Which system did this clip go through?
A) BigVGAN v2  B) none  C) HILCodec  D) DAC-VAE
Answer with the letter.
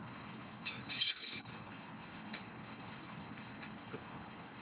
C